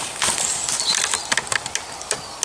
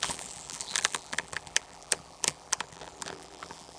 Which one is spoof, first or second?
second